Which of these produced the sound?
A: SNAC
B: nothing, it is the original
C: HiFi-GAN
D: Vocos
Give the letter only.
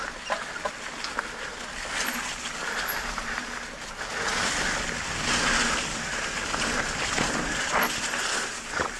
B